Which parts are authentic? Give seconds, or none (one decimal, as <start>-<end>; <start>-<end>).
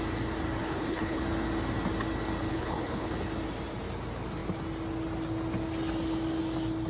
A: 0.0-0.6; 1.2-2.5; 3.1-6.9